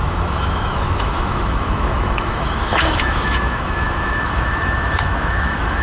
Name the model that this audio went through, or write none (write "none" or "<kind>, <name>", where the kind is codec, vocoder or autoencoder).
autoencoder, DAC-VAE